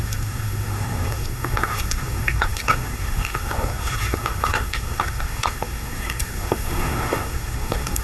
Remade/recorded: remade